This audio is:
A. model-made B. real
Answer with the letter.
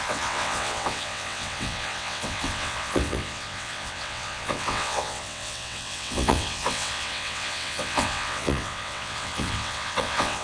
A